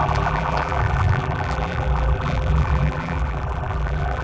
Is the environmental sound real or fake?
fake